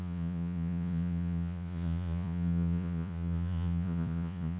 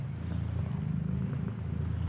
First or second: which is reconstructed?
first